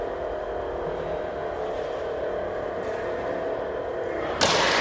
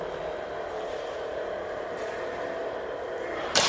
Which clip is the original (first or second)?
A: first